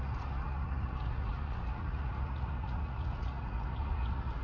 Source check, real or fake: fake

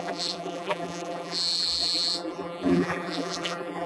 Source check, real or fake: fake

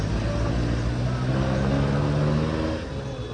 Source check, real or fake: real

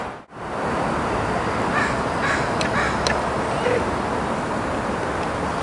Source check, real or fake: real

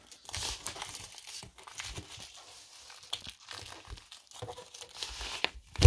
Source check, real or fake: real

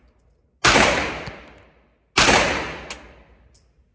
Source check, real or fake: real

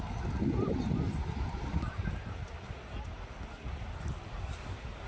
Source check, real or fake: real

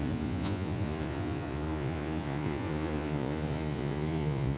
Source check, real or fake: fake